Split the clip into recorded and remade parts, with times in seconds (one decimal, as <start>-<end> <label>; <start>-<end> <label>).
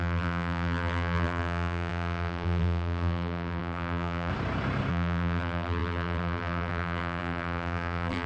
0.0-4.3 remade; 4.3-4.9 recorded; 4.9-8.3 remade